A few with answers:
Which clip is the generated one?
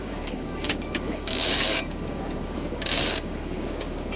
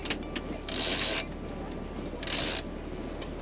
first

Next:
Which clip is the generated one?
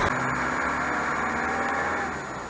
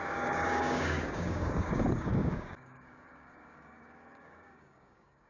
second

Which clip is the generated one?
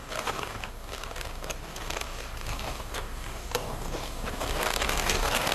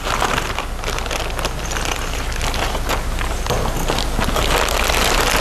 first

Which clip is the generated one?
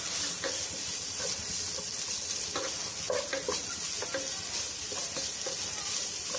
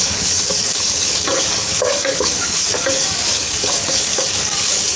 second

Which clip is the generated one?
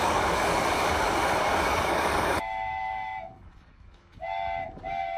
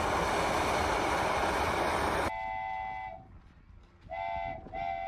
first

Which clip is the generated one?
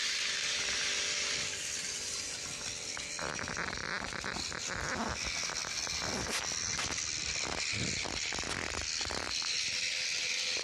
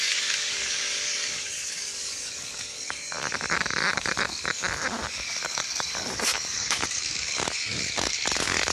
second